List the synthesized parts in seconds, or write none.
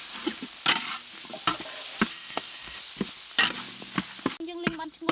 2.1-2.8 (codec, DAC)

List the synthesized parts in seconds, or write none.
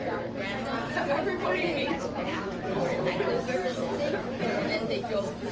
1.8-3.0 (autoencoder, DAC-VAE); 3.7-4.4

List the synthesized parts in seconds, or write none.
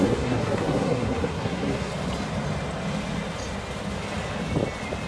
0.0-1.9 (codec, SNAC)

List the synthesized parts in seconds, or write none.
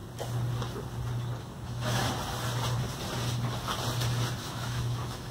1.4-2.0 (autoencoder, DAC-VAE); 4.4-5.3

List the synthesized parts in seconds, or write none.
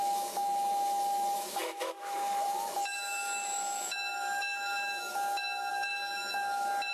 0.0-6.9 (autoencoder, DAC-VAE)